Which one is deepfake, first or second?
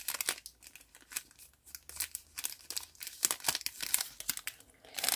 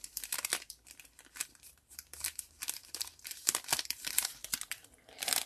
second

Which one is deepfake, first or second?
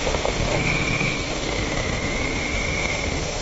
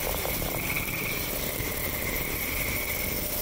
first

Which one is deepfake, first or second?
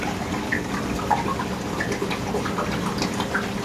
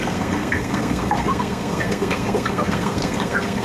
second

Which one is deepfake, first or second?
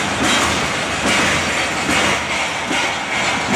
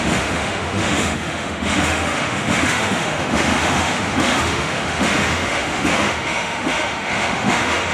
second